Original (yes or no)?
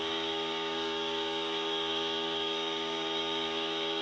no